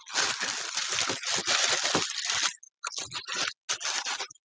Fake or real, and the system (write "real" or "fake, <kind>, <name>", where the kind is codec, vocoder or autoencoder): real